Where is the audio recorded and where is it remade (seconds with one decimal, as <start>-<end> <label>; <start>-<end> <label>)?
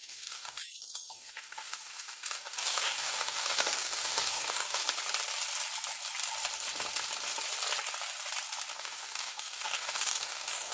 0.0-4.8 remade; 4.8-8.7 recorded; 8.7-10.7 remade